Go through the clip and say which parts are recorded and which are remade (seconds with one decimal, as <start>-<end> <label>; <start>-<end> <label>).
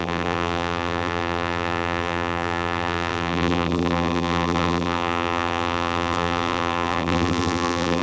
0.0-8.0 remade